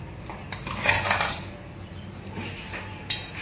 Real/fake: real